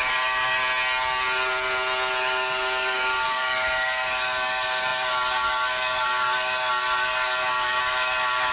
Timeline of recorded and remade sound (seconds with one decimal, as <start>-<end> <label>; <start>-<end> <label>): 0.0-0.6 remade; 0.6-2.2 recorded; 2.2-8.5 remade